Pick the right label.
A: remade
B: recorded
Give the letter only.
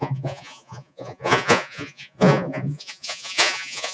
A